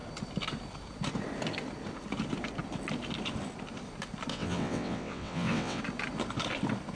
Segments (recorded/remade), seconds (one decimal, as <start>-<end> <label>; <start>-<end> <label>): 0.0-4.3 recorded; 4.3-5.8 remade; 5.8-6.9 recorded